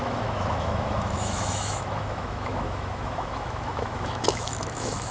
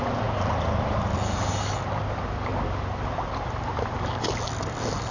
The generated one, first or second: first